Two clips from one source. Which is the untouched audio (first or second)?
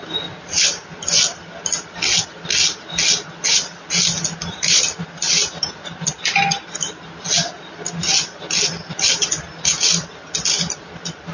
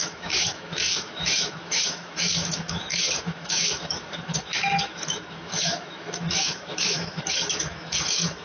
first